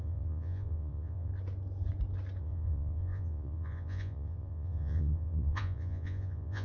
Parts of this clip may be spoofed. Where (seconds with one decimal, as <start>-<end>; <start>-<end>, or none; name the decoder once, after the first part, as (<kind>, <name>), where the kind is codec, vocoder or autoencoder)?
0.0-1.3 (vocoder, Vocos); 2.4-6.6